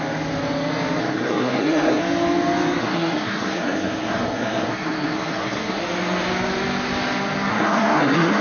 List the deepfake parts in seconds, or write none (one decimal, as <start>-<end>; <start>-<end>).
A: 1.0-2.0; 2.8-5.8; 7.5-8.4